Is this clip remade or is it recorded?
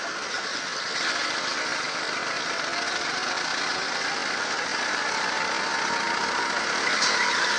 recorded